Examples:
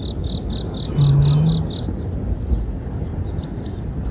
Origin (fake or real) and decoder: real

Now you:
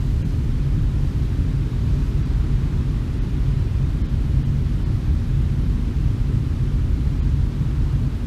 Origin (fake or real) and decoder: fake, vocoder, BigVGAN v2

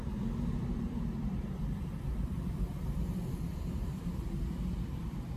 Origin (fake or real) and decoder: fake, vocoder, BigVGAN v2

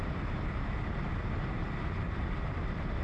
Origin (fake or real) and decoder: real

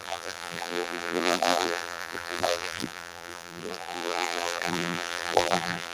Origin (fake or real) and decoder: fake, vocoder, BigVGAN v2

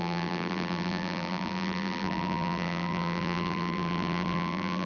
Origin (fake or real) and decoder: fake, vocoder, BigVGAN v2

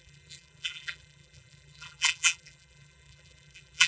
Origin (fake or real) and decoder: fake, vocoder, BigVGAN v2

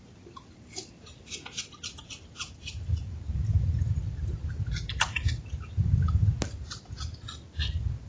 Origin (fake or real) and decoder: real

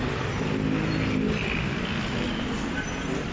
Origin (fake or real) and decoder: real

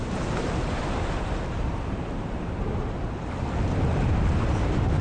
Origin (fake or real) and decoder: fake, vocoder, BigVGAN v2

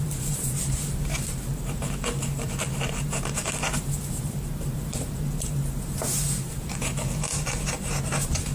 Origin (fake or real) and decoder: fake, vocoder, BigVGAN v2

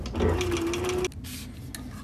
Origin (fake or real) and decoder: real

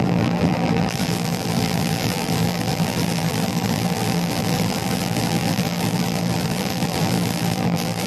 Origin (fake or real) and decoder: fake, vocoder, BigVGAN v2